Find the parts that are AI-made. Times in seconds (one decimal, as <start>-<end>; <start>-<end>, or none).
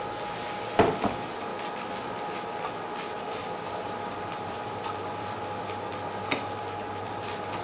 1.5-2.2; 3.4-5.4; 5.9-6.6